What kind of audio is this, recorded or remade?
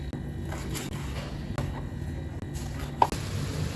recorded